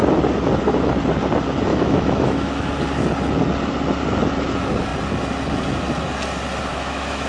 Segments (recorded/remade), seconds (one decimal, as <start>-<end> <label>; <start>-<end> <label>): 0.0-1.7 recorded; 1.7-2.7 remade; 2.7-6.7 recorded; 6.7-7.3 remade